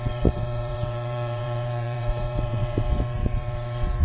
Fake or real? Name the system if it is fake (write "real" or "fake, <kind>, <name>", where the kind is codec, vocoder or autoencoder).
fake, vocoder, WaveNeXt